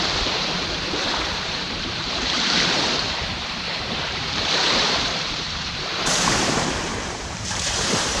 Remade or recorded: remade